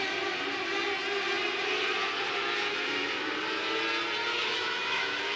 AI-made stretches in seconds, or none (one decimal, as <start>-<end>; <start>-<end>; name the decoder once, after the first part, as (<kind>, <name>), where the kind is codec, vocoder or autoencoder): 2.7-3.3 (autoencoder, DAC-VAE); 4.3-5.4